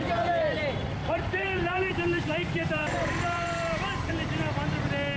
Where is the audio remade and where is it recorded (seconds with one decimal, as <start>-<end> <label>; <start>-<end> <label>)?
0.0-1.0 recorded; 1.0-4.1 remade; 4.1-5.2 recorded